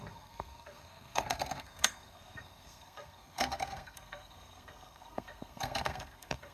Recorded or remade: remade